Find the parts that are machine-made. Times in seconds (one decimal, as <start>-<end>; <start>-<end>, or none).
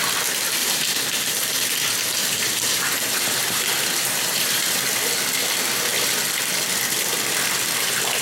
0.6-4.8